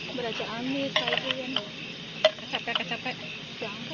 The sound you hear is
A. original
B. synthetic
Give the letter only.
A